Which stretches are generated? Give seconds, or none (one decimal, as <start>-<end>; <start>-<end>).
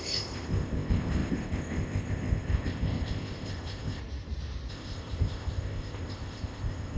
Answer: 0.0-4.0; 4.7-7.0